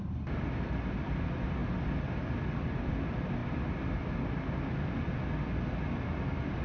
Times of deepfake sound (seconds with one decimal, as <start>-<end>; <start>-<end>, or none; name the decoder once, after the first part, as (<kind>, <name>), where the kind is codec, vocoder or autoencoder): none